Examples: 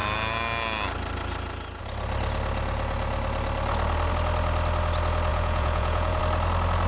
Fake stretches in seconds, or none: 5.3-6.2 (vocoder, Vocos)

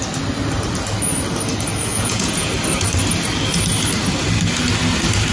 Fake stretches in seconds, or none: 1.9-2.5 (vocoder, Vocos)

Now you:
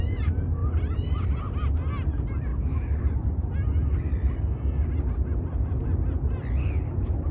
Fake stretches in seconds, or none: none

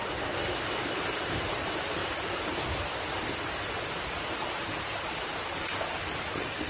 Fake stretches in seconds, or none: 1.5-2.0 (vocoder, BigVGAN v2); 5.2-6.7